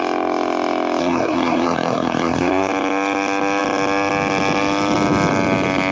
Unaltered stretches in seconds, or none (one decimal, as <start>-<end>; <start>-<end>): 0.0-1.0; 2.7-5.9